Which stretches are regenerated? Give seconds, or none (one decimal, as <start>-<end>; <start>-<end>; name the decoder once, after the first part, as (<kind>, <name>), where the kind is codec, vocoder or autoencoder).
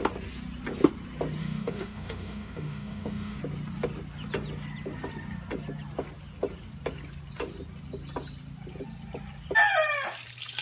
1.4-3.4 (autoencoder, DAC-VAE)